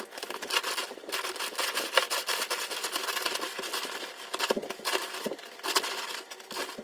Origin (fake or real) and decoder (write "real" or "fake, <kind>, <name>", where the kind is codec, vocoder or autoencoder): real